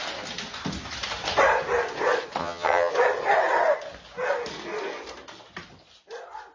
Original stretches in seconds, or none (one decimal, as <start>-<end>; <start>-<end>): 0.0-2.4; 2.9-6.5